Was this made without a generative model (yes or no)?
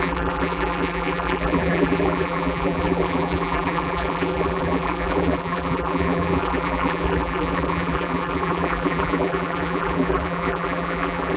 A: no